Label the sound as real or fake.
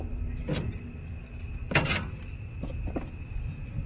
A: real